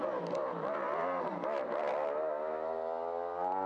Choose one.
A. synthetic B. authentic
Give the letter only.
B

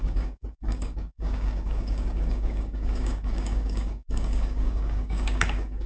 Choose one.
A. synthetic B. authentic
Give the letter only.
A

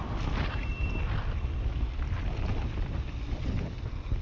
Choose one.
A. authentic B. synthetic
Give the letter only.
A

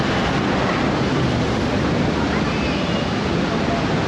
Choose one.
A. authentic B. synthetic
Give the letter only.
A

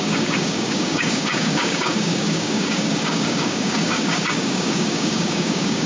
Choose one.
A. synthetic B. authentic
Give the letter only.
A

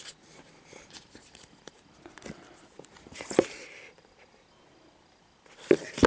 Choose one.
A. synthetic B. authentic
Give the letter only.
B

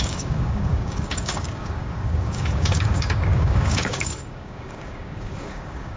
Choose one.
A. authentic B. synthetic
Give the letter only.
B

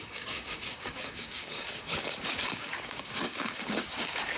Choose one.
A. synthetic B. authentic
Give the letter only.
A